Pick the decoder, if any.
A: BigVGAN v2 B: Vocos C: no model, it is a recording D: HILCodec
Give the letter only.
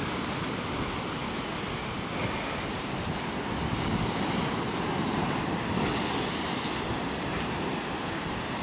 C